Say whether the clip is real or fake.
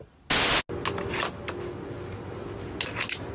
real